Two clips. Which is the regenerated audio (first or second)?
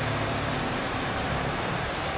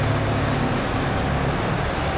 first